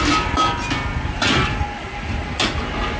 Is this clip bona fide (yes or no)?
yes